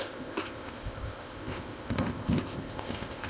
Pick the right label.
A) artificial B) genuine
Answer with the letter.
A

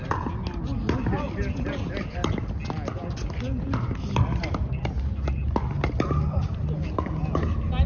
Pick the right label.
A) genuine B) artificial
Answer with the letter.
A